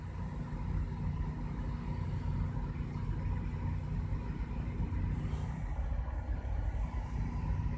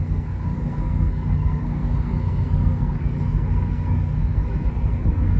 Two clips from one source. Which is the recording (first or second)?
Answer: first